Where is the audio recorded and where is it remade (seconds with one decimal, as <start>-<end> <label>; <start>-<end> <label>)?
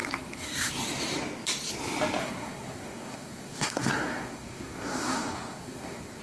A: 0.0-0.7 remade; 0.7-2.2 recorded; 2.2-6.2 remade